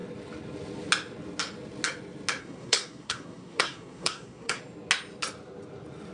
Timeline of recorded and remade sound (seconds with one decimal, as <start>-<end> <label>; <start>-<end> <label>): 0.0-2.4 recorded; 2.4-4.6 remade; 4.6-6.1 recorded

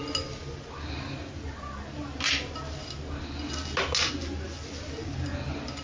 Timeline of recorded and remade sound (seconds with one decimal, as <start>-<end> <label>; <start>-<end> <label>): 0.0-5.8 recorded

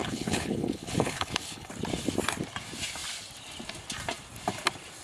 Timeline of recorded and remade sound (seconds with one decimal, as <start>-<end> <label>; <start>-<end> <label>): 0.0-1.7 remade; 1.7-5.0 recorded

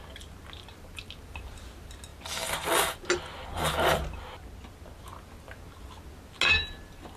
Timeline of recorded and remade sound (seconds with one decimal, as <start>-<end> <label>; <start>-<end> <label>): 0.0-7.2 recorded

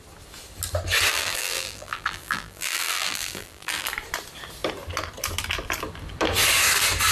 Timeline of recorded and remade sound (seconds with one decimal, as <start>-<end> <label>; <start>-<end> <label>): 0.0-1.1 recorded; 1.1-3.9 remade; 3.9-7.1 recorded

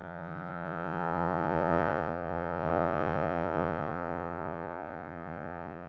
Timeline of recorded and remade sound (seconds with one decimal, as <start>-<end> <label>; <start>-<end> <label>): 0.0-5.9 remade

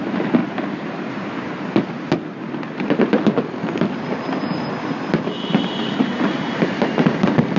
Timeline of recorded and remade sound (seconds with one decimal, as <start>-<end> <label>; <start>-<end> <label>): 0.0-7.6 recorded

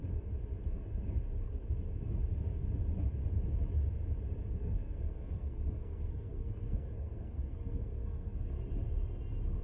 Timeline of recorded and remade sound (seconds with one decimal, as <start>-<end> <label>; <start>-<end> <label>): 0.0-4.6 recorded; 4.6-8.5 remade; 8.5-9.6 recorded